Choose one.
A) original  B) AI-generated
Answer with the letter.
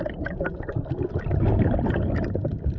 A